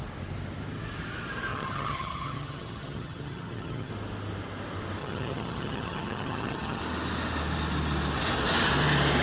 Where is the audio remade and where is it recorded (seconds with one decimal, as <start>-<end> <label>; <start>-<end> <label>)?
0.0-1.5 recorded; 1.5-3.9 remade; 3.9-5.0 recorded; 5.0-6.8 remade; 6.8-9.2 recorded